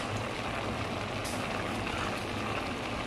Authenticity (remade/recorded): recorded